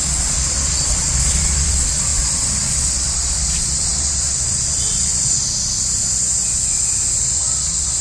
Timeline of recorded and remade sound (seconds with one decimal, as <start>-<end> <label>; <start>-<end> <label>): 0.0-5.4 remade; 5.4-7.2 recorded; 7.2-8.0 remade